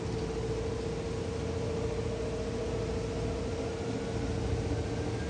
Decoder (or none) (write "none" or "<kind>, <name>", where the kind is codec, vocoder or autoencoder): none